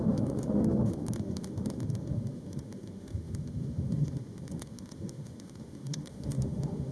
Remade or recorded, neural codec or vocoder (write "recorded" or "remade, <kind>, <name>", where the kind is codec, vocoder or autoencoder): remade, autoencoder, DAC-VAE